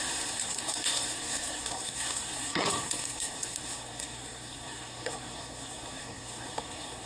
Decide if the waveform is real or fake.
fake